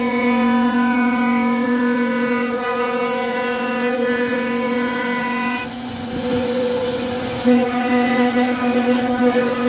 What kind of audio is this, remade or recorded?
remade